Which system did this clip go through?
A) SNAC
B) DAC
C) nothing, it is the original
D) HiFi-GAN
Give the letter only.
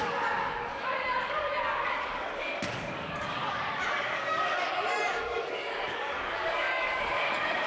B